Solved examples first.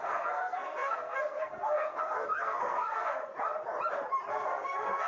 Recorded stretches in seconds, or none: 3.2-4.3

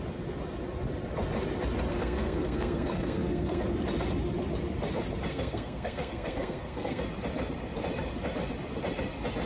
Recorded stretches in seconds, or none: 0.0-1.9; 3.6-5.3; 7.0-9.5